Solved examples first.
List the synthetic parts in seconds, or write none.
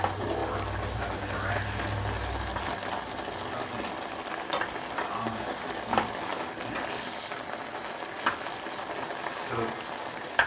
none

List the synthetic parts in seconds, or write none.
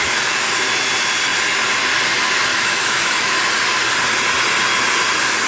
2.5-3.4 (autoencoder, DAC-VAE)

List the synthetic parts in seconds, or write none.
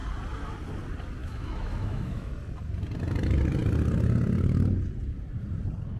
1.2-2.3 (autoencoder, DAC-VAE)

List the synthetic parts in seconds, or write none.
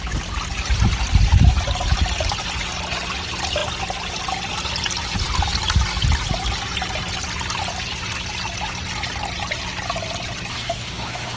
10.5-11.4 (autoencoder, DAC-VAE)